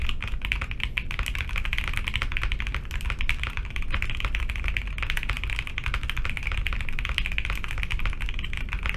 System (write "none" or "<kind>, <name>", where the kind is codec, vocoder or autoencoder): none